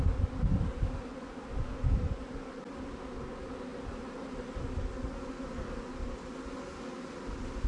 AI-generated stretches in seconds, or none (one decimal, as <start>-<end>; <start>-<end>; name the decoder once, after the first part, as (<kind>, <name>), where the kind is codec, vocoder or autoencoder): none